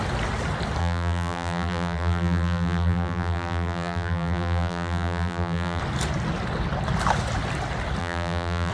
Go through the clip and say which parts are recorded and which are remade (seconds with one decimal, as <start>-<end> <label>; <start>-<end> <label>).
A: 0.0-0.8 recorded; 0.8-5.8 remade; 5.8-8.0 recorded; 8.0-8.7 remade